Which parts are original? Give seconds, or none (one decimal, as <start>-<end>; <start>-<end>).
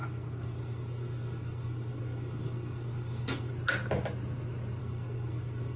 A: 3.5-4.8